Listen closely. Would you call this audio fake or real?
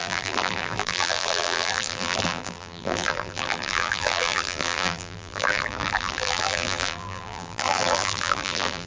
fake